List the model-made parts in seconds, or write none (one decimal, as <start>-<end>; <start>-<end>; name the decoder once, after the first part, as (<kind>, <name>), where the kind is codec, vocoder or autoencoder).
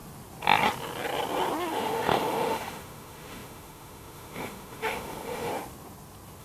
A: 1.7-5.5 (autoencoder, DAC-VAE)